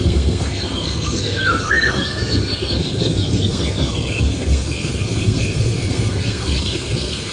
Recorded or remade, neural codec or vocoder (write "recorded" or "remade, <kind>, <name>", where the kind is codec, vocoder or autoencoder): remade, codec, SNAC